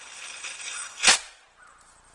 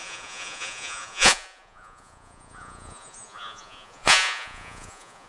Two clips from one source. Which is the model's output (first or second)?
second